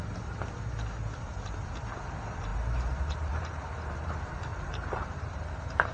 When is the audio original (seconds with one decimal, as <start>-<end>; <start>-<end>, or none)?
0.0-2.5; 4.1-4.5; 5.5-5.9